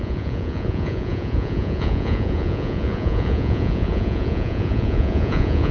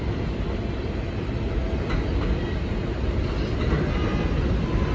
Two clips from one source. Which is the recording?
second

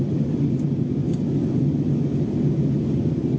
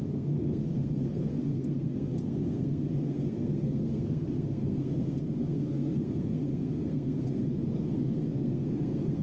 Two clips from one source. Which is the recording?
first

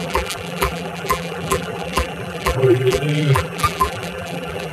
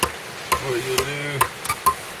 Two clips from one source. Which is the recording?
second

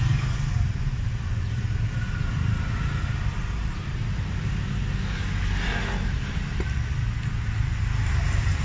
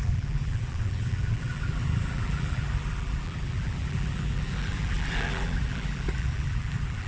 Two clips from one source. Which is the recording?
first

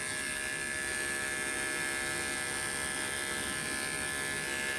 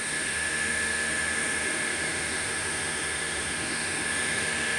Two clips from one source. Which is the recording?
first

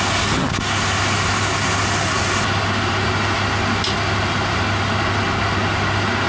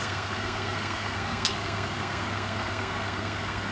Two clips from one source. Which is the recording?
first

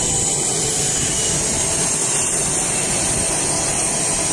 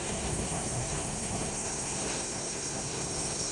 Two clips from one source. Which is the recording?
first